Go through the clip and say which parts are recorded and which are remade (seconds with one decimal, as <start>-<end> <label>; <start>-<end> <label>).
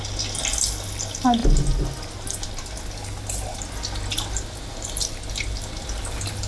0.0-6.5 recorded